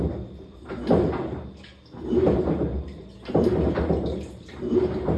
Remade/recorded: recorded